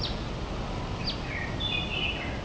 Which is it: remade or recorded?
recorded